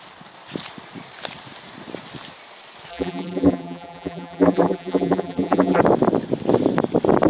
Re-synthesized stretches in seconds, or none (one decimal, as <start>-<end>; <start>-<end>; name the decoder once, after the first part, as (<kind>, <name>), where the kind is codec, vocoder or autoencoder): 2.9-5.8 (vocoder, BigVGAN v2)